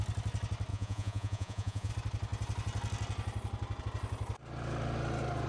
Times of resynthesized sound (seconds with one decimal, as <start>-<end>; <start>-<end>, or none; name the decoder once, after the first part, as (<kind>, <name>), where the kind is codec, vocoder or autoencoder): 0.7-1.9 (vocoder, Vocos)